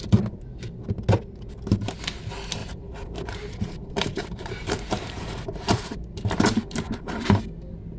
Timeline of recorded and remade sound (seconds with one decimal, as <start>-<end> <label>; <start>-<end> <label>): 0.0-2.6 recorded; 2.6-7.4 remade; 7.4-8.0 recorded